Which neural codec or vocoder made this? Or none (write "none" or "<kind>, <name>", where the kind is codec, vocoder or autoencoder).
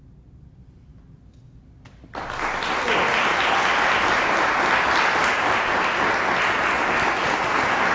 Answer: none